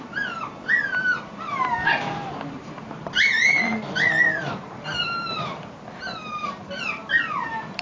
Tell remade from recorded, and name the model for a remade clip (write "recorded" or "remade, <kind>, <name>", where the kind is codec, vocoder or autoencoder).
recorded